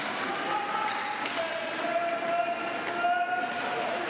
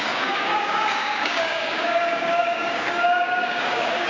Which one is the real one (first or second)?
first